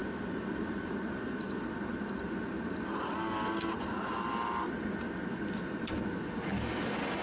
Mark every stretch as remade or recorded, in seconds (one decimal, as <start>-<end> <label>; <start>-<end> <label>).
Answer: 0.0-7.2 recorded

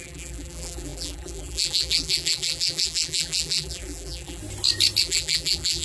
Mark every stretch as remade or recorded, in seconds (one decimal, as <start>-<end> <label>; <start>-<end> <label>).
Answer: 0.0-4.4 remade; 4.4-5.0 recorded; 5.0-5.8 remade

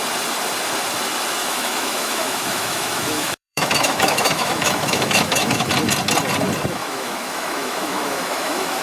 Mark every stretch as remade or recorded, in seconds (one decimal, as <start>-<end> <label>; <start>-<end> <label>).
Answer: 0.0-1.4 recorded; 1.4-5.7 remade; 5.7-6.8 recorded; 6.8-8.8 remade

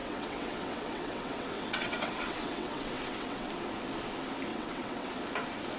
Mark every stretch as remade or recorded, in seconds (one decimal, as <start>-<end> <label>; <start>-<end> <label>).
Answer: 0.0-3.5 remade; 3.5-4.5 recorded; 4.5-5.1 remade; 5.1-5.8 recorded

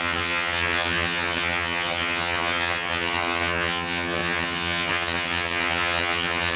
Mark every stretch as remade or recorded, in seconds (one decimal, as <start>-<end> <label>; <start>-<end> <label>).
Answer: 0.0-6.6 remade

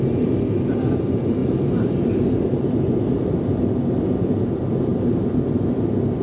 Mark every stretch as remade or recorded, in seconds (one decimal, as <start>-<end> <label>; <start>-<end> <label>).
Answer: 0.0-1.4 recorded; 1.4-2.9 remade; 2.9-4.9 recorded; 4.9-5.5 remade; 5.5-6.2 recorded